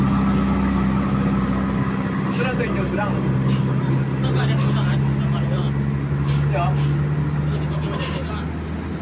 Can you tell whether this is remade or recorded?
recorded